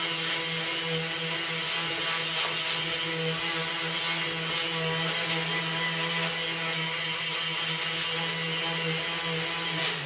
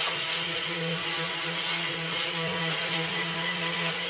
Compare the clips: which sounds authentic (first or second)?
first